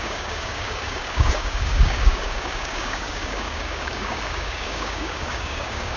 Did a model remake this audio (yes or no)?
yes